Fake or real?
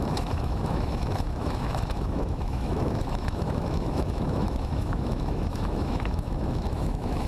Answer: fake